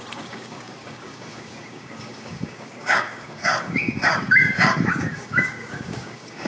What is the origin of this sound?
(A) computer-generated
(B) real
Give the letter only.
A